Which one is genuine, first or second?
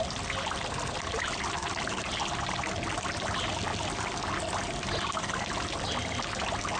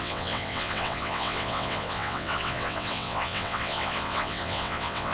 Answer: first